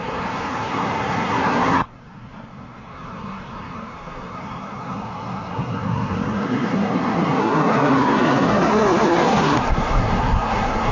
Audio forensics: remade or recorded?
remade